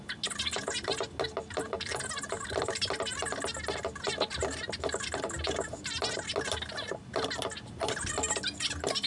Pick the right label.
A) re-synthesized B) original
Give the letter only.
B